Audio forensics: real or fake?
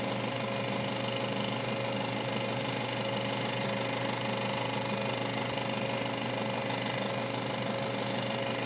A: real